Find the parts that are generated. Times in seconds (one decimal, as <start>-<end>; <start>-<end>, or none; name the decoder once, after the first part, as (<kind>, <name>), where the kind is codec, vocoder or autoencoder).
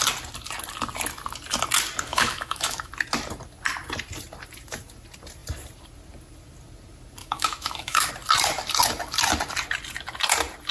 2.1-2.9 (autoencoder, DAC-VAE); 7.2-8.1